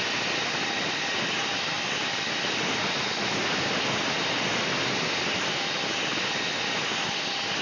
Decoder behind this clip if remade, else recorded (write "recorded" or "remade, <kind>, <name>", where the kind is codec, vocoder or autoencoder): recorded